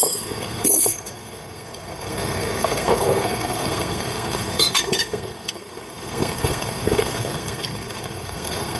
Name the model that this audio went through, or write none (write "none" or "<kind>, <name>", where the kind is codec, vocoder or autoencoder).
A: codec, SNAC